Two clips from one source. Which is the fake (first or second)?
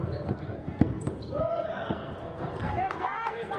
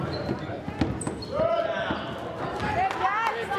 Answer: first